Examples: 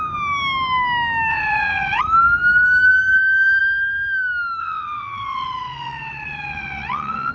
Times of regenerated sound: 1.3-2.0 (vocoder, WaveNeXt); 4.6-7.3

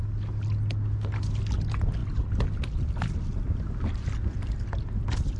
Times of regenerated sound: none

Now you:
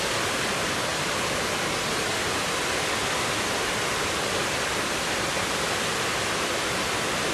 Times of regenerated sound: none

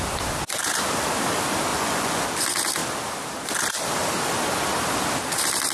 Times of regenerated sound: 1.7-2.2 (vocoder, Vocos)

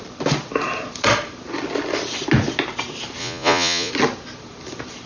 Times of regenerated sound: 3.2-3.9 (vocoder, Vocos)